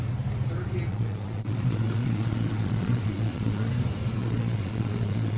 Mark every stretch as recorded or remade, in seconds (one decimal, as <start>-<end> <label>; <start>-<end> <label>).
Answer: 0.0-0.9 recorded; 0.9-3.7 remade; 3.7-4.2 recorded; 4.2-5.4 remade